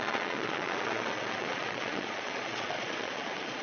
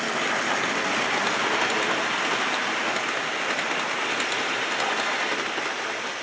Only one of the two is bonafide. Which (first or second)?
second